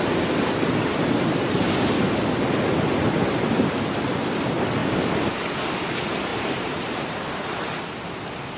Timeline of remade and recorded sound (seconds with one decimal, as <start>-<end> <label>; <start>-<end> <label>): 0.0-0.9 recorded; 0.9-1.7 remade; 1.7-4.8 recorded; 4.8-5.5 remade; 5.5-6.3 recorded; 6.3-7.8 remade; 7.8-8.6 recorded